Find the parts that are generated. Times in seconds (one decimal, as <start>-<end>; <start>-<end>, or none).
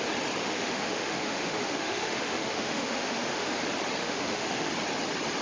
0.4-3.6; 4.0-4.7